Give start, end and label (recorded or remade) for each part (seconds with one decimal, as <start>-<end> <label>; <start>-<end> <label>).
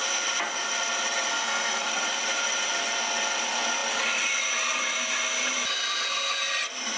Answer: 0.0-1.3 recorded; 1.3-1.9 remade; 1.9-7.0 recorded